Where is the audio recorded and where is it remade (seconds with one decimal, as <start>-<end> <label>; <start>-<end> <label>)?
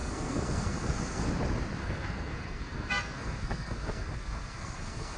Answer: 0.0-1.3 remade; 1.3-1.8 recorded; 1.8-5.2 remade